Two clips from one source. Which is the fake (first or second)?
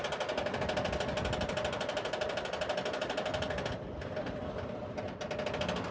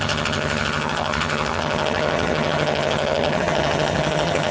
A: second